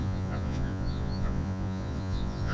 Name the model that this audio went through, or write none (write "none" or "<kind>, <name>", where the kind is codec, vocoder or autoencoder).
vocoder, Vocos